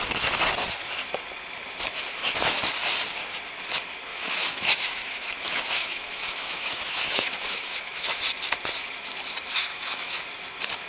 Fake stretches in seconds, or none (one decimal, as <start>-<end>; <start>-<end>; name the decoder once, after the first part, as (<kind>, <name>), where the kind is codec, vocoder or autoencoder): 4.1-8.2 (autoencoder, DAC-VAE); 9.7-10.2